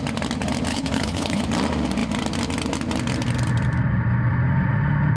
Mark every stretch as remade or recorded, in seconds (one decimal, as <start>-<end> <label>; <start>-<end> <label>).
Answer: 0.0-0.7 recorded; 0.7-1.4 remade; 1.4-5.2 recorded